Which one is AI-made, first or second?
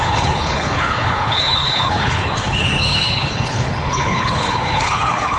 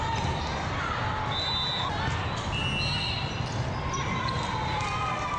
first